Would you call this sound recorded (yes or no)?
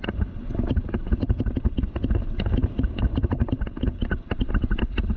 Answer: yes